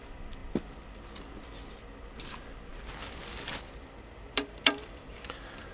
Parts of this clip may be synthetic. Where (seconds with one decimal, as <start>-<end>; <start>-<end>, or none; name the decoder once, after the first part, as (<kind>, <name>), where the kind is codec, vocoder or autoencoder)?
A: 2.7-5.7 (vocoder, BigVGAN v2)